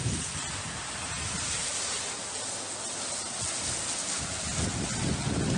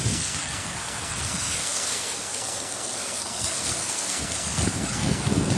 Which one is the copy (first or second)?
second